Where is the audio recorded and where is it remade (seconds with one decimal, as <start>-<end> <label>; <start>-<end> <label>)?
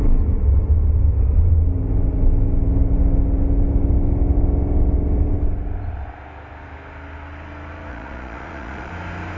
0.0-7.9 recorded; 7.9-8.9 remade; 8.9-9.4 recorded